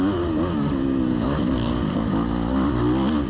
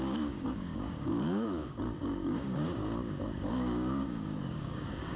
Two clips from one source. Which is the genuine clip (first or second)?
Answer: first